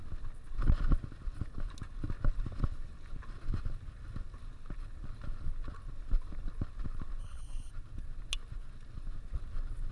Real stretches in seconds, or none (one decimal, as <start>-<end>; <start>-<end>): 0.0-7.2; 7.7-9.9